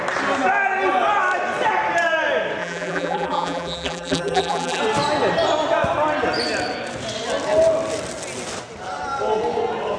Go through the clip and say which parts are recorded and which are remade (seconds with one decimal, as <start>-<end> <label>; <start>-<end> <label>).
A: 0.0-2.6 recorded; 2.6-4.8 remade; 4.8-10.0 recorded